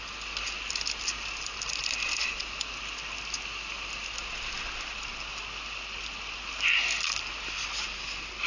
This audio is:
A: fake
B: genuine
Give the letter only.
B